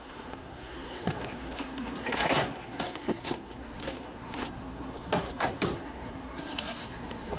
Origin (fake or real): fake